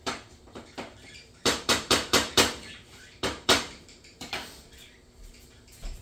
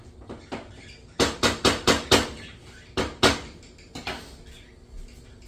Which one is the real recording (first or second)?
second